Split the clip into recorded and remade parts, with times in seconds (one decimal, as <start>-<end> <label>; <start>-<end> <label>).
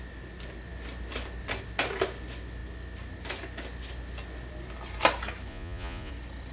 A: 0.0-5.5 recorded; 5.5-6.1 remade; 6.1-6.5 recorded